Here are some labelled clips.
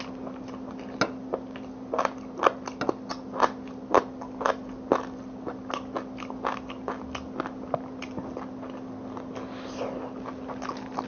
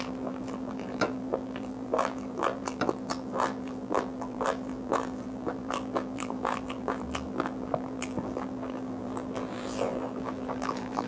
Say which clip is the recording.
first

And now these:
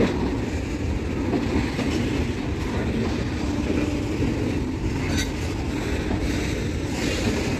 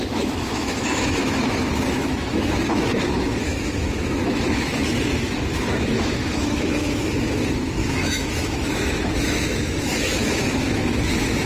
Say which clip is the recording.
first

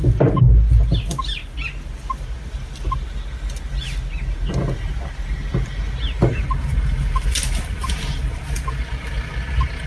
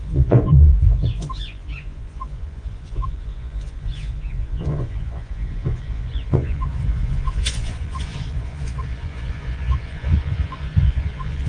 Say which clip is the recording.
first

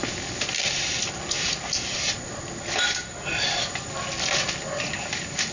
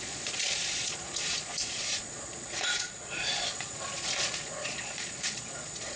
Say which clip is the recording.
first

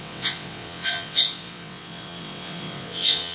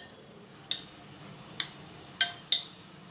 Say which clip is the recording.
second